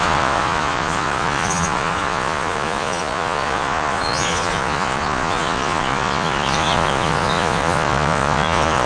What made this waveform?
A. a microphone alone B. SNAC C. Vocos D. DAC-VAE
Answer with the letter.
C